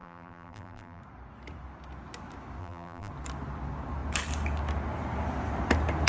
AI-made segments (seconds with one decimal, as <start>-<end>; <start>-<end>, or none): 0.0-1.0; 2.6-3.1